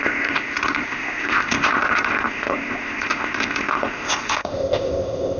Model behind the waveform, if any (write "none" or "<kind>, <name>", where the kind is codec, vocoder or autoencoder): codec, ZipCodec